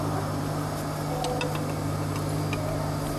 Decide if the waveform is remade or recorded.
recorded